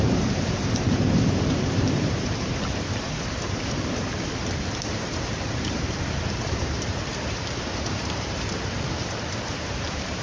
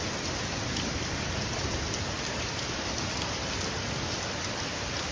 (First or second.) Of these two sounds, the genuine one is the second